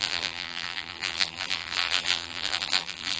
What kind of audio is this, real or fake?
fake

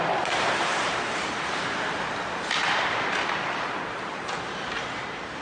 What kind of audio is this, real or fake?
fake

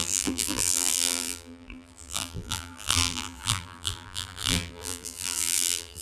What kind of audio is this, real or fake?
fake